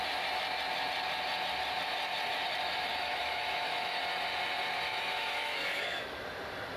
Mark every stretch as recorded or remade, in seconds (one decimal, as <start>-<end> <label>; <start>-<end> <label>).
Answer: 0.0-2.9 recorded; 2.9-4.0 remade; 4.0-4.9 recorded; 4.9-6.1 remade; 6.1-6.8 recorded